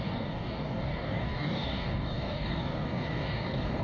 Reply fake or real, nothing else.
fake